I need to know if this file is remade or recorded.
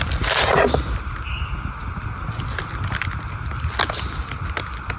recorded